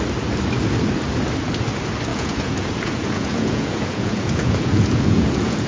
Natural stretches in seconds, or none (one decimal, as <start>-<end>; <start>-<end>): 0.0-2.1